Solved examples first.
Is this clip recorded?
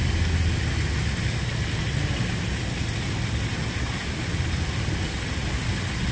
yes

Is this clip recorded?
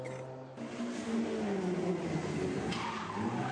yes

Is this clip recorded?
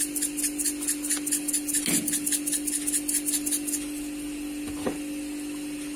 yes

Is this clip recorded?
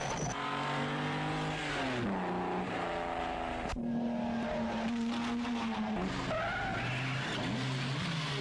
yes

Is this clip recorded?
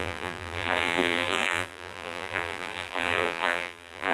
no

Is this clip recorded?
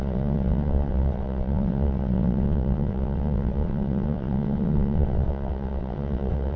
no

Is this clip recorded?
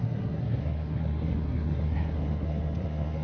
no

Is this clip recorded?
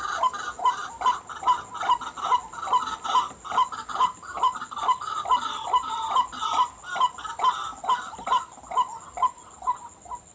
yes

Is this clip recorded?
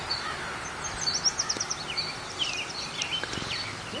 yes